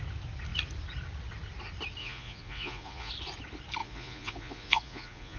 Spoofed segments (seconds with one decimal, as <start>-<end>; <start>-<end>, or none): 2.0-3.1; 3.8-5.4